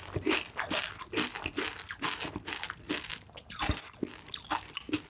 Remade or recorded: recorded